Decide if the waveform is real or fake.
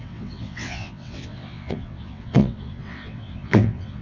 fake